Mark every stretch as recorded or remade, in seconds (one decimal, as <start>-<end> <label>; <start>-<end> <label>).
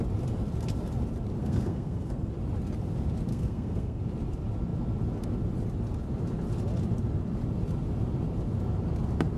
0.0-1.4 recorded; 1.4-2.3 remade; 2.3-3.3 recorded; 3.3-4.0 remade; 4.0-9.4 recorded